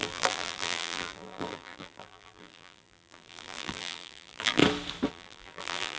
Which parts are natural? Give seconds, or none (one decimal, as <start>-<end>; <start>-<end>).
4.6-5.1

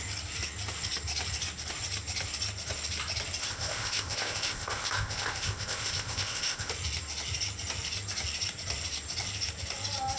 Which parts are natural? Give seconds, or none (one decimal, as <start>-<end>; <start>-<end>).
0.0-3.4; 6.7-10.2

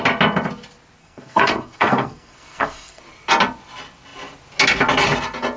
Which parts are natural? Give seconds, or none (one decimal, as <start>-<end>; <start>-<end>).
0.0-1.0; 3.0-5.6

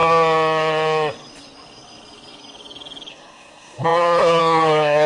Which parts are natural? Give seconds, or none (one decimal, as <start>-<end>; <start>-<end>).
0.0-3.1